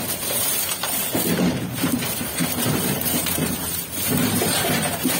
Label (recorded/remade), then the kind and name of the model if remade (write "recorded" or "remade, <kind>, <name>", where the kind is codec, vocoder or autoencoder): remade, vocoder, BigVGAN v2